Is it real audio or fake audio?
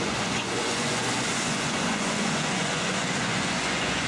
fake